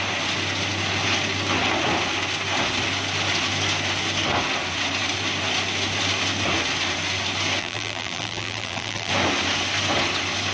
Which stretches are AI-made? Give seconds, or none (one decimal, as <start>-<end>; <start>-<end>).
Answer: 7.6-9.1